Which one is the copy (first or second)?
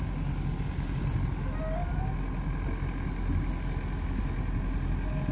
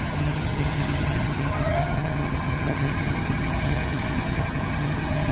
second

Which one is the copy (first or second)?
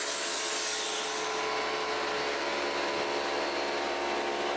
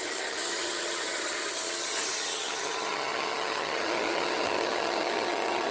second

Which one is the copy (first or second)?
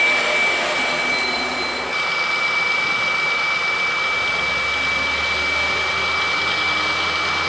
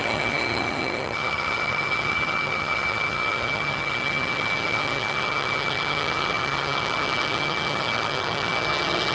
second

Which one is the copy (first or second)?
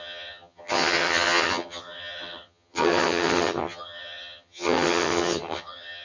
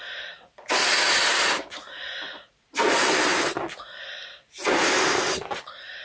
first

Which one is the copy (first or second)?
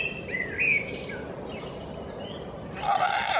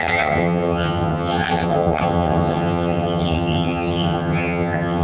second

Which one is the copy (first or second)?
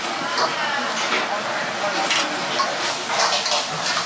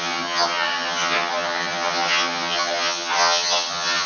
second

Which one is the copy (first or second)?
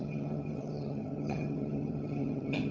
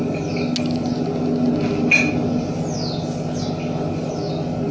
first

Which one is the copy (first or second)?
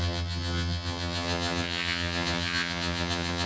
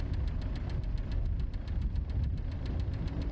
first